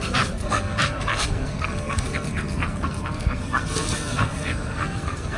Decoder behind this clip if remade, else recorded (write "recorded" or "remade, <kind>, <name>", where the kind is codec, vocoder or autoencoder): remade, codec, SNAC